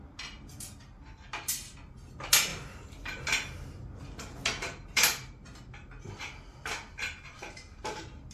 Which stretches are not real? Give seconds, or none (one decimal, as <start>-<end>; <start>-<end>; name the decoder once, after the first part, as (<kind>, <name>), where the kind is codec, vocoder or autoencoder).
none